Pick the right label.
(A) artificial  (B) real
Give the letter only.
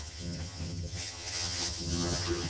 A